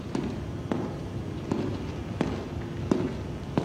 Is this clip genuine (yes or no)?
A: yes